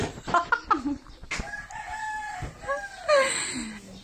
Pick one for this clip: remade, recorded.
recorded